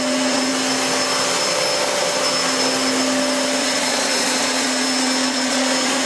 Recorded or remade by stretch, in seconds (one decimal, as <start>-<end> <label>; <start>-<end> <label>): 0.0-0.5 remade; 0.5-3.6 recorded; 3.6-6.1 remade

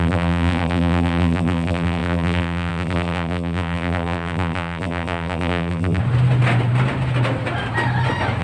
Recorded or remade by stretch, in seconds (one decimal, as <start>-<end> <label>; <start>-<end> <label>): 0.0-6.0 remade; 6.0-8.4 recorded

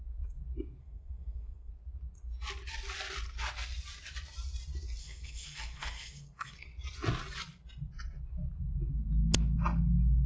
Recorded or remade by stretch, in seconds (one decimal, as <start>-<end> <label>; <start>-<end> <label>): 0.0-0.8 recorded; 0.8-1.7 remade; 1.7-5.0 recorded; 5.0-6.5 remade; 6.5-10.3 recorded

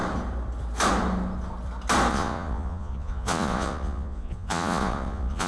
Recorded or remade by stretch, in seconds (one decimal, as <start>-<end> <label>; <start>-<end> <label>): 0.0-2.1 recorded; 2.1-5.5 remade

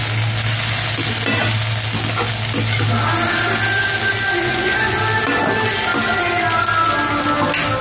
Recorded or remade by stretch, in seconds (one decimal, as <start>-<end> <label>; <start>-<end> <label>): 0.0-4.4 recorded; 4.4-5.0 remade; 5.0-7.8 recorded

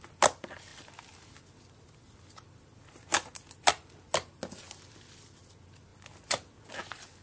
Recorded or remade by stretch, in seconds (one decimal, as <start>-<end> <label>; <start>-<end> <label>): 0.0-7.2 recorded

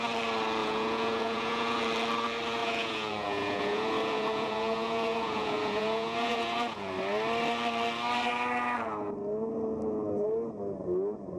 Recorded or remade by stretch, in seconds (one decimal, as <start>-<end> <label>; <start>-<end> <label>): 0.0-0.6 recorded; 0.6-1.8 remade; 1.8-2.6 recorded; 2.6-6.9 remade; 6.9-11.4 recorded

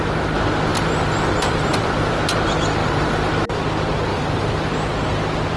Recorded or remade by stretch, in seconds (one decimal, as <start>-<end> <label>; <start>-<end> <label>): 0.0-0.7 recorded; 0.7-2.2 remade; 2.2-2.8 recorded; 2.8-3.3 remade; 3.3-4.1 recorded; 4.1-4.7 remade; 4.7-5.6 recorded